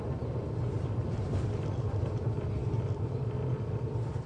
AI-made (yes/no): yes